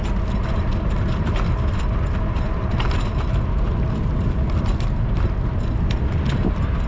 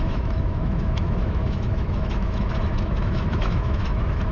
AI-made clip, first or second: second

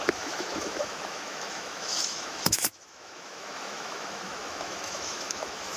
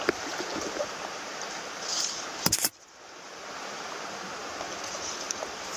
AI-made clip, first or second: first